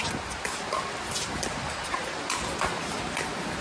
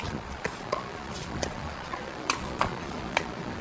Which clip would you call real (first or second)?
first